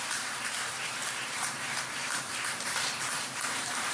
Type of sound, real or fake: fake